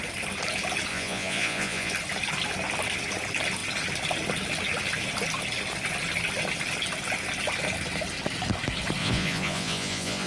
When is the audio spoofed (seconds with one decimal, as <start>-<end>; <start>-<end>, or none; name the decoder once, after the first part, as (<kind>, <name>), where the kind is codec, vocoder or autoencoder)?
0.9-1.9 (vocoder, Vocos); 9.0-10.3